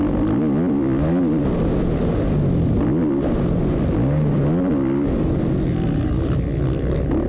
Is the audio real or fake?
real